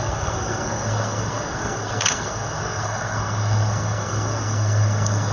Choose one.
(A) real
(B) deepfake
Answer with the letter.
B